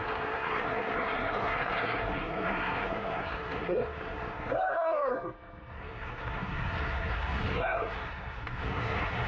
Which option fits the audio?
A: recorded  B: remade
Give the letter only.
B